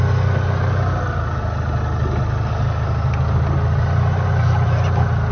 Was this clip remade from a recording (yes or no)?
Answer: no